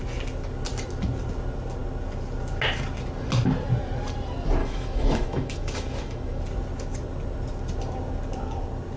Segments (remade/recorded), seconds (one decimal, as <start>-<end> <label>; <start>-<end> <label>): 0.0-4.6 recorded; 4.6-6.4 remade; 6.4-9.0 recorded